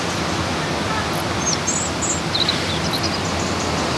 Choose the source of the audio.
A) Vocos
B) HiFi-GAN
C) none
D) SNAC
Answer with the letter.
C